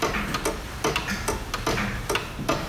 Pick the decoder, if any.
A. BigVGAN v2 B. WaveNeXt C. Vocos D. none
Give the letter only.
D